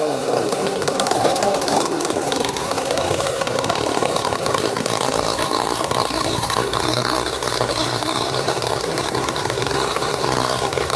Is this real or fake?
fake